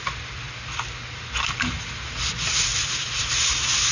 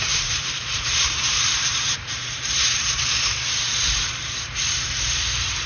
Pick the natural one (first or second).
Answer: first